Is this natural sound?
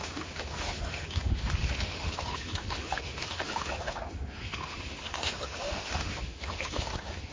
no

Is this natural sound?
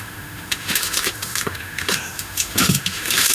no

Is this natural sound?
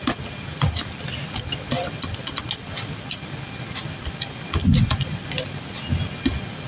yes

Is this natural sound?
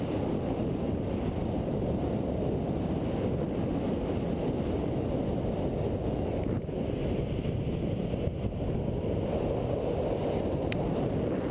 yes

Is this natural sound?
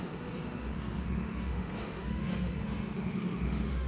no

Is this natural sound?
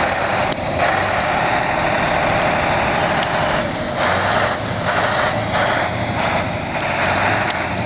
yes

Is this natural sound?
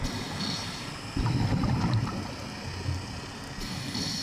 yes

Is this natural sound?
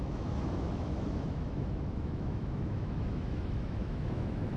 no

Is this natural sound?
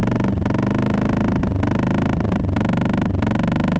yes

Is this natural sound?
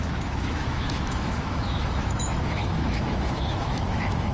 no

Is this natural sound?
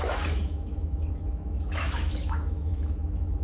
no